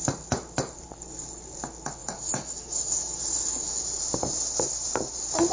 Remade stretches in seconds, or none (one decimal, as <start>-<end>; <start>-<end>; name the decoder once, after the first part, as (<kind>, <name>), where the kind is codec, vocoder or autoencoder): 2.0-3.8 (autoencoder, DAC-VAE)